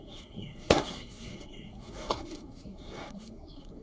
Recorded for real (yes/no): no